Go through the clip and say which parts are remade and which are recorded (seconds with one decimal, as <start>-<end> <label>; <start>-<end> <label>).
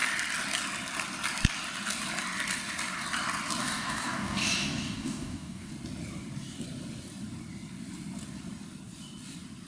0.0-3.6 recorded; 3.6-5.7 remade; 5.7-9.7 recorded